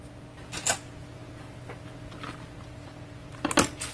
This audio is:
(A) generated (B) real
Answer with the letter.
B